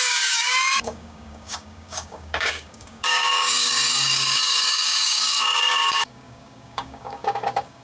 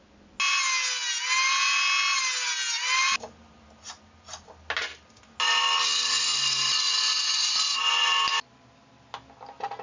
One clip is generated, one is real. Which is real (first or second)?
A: second